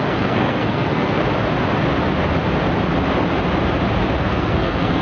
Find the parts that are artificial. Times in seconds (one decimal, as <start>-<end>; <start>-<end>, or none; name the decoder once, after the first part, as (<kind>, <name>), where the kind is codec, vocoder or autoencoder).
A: 0.0-1.2 (codec, SNAC); 4.2-5.0